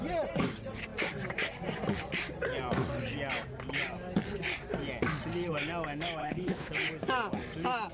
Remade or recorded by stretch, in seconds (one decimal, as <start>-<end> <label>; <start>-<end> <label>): 0.0-6.2 recorded; 6.2-6.7 remade; 6.7-7.9 recorded